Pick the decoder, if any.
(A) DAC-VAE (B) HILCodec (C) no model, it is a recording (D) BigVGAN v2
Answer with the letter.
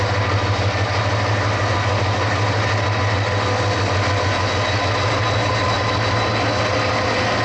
C